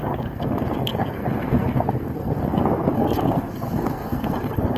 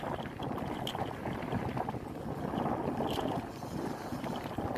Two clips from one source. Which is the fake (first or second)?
first